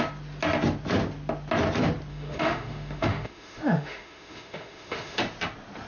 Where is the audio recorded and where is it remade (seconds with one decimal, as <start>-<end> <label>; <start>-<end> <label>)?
0.0-2.1 recorded; 2.1-5.2 remade; 5.2-5.9 recorded